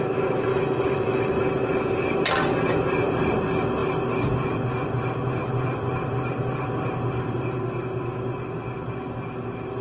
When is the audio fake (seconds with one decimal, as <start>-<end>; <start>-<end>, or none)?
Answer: 0.5-1.4